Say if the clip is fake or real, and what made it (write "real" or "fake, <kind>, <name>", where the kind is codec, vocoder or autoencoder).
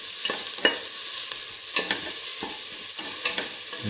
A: real